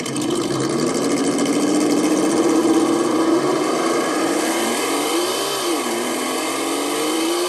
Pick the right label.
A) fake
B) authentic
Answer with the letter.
A